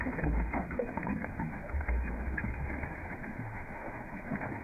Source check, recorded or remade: remade